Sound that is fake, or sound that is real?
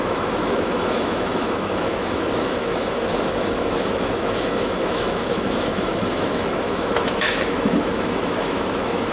fake